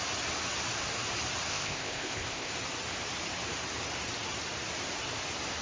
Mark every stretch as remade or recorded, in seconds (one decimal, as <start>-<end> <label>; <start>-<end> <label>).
0.0-1.5 recorded; 1.5-2.5 remade; 2.5-5.6 recorded